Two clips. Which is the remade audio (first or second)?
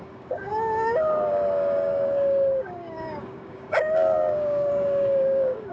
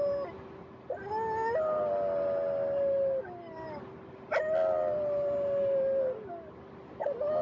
first